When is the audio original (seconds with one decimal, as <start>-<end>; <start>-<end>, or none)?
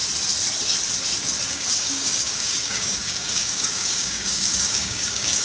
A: 0.0-1.5